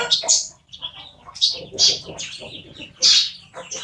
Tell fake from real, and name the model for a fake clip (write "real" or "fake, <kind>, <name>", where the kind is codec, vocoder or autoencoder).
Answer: real